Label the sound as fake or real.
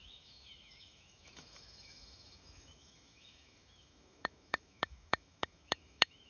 fake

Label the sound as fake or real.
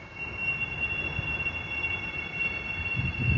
real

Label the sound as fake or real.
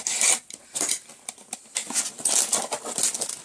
real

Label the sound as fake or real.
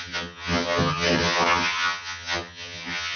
fake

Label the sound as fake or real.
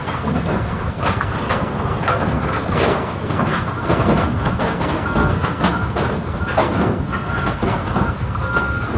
fake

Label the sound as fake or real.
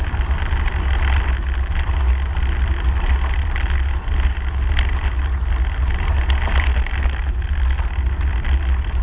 real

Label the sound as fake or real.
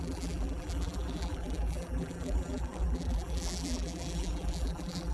fake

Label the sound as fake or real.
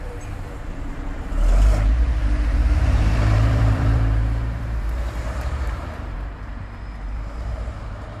fake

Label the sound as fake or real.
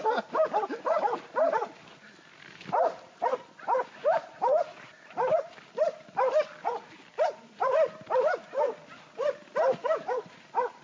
real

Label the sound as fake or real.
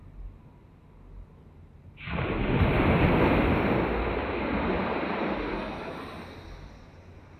real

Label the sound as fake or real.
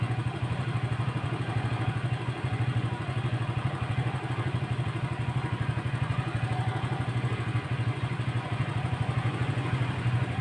fake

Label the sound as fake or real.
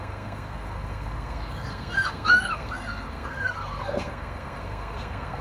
fake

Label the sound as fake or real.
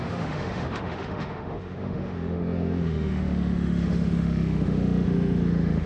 fake